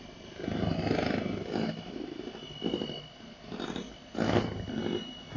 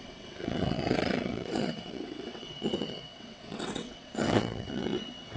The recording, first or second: first